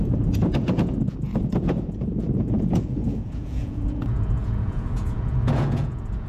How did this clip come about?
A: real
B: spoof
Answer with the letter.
B